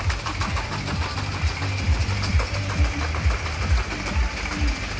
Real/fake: real